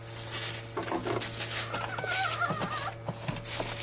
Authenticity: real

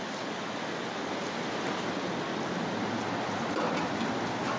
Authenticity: real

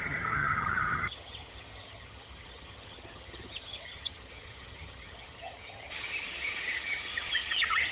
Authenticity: fake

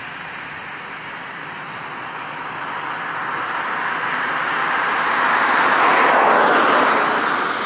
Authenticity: real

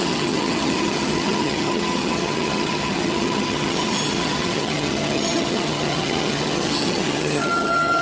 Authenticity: fake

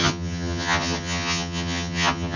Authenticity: fake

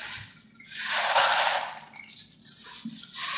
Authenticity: real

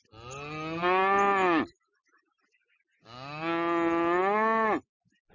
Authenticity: real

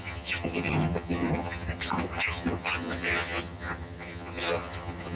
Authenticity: fake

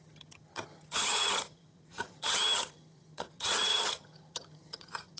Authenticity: fake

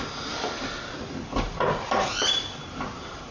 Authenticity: real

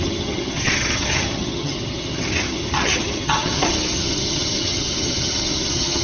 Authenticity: fake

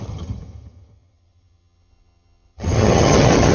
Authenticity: fake